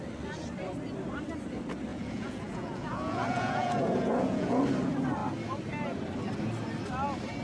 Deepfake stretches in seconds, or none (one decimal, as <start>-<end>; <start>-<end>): 1.9-4.6